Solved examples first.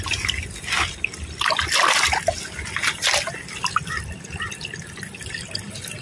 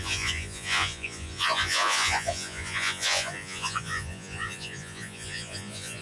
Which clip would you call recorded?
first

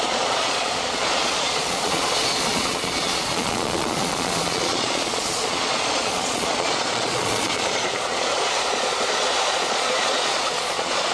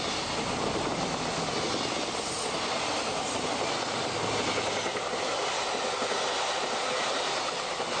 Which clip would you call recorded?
second